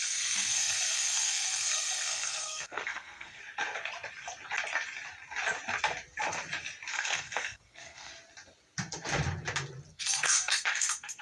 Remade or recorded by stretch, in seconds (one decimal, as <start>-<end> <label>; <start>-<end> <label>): 0.0-3.4 remade; 3.4-6.9 recorded; 6.9-8.1 remade; 8.1-9.9 recorded; 9.9-11.2 remade